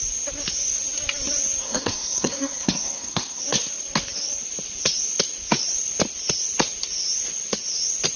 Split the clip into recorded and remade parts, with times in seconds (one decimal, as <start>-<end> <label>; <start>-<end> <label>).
0.0-1.6 recorded; 1.6-3.4 remade; 3.4-8.2 recorded